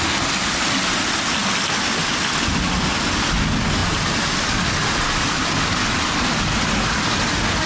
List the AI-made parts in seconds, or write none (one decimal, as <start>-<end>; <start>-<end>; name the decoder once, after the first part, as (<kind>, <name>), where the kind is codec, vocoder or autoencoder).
none